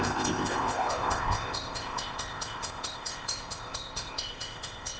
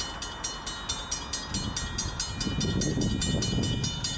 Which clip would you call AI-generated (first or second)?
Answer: first